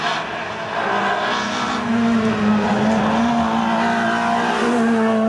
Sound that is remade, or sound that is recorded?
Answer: recorded